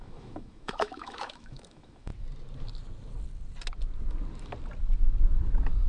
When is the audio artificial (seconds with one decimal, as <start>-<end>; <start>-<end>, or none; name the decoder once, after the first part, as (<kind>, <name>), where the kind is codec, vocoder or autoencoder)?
0.0-2.1 (autoencoder, DAC-VAE)